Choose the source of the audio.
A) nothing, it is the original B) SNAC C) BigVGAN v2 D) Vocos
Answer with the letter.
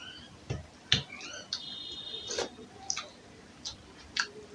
A